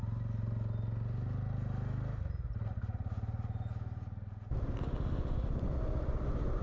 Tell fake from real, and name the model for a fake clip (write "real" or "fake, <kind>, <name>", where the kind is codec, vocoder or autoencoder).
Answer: real